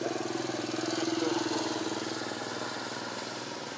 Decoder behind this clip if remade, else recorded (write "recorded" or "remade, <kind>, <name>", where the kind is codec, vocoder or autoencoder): recorded